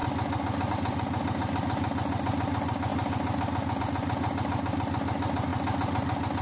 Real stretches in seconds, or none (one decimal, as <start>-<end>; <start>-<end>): 0.0-6.4